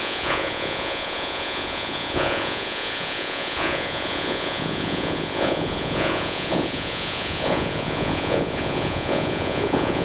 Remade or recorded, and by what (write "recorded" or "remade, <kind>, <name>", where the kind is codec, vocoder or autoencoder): remade, vocoder, Vocos